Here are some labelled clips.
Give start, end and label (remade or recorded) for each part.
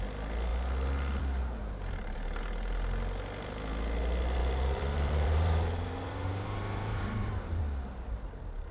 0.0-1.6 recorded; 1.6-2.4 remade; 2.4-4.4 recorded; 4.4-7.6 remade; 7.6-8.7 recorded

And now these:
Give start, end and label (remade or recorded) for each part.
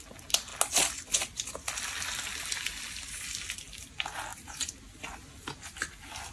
0.0-4.3 recorded; 4.3-4.8 remade; 4.8-6.3 recorded